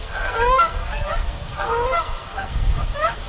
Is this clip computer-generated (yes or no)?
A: yes